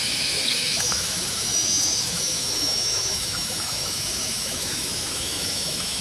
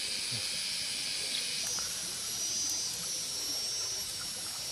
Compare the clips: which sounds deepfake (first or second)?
first